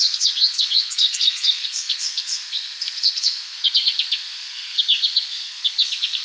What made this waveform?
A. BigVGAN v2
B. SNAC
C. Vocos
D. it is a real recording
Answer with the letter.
B